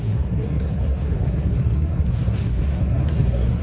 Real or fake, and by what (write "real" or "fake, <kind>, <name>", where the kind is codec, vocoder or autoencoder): fake, codec, SNAC